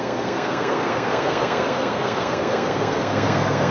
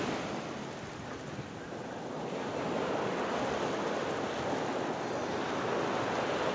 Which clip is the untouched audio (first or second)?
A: second